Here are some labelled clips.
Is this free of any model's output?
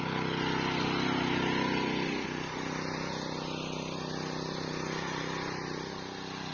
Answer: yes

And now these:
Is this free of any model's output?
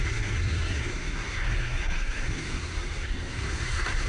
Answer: no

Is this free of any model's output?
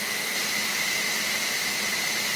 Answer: no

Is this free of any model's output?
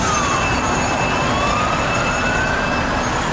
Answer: yes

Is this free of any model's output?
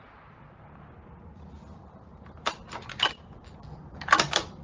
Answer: yes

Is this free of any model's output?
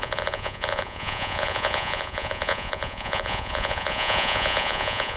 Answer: no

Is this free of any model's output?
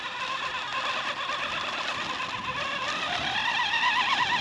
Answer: yes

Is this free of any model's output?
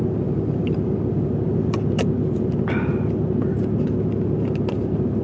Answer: yes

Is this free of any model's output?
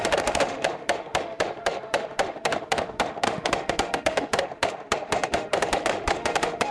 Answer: no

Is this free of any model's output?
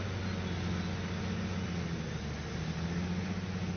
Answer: yes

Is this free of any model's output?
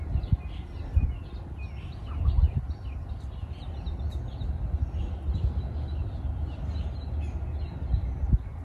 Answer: yes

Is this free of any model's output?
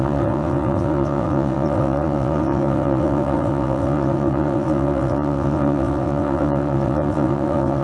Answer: no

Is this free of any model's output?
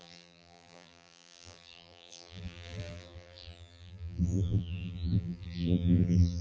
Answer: no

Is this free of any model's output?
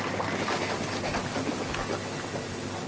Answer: yes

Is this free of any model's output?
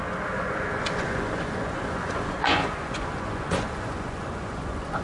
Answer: no